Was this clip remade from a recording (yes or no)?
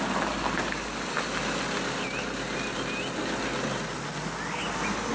no